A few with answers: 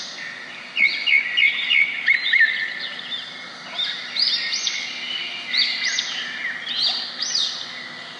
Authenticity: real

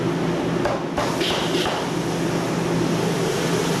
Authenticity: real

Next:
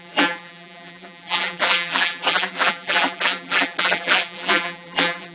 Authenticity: fake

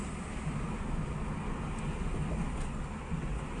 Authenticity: real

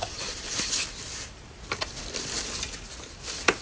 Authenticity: fake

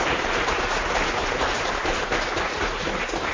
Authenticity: fake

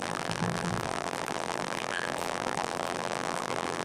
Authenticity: fake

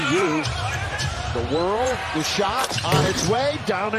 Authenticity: fake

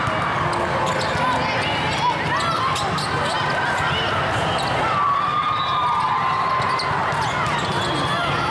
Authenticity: real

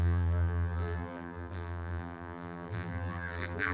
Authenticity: fake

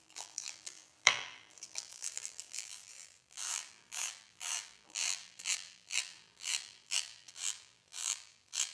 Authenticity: fake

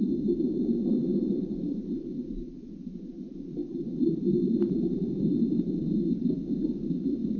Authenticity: fake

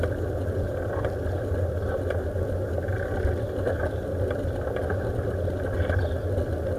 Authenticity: real